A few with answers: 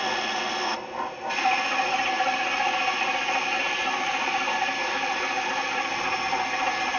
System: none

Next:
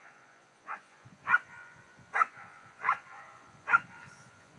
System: vocoder, Vocos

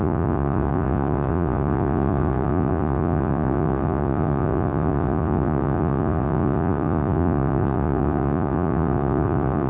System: vocoder, Vocos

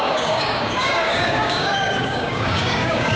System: codec, DAC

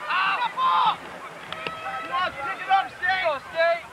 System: none